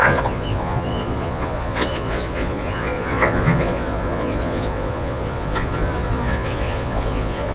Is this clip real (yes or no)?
no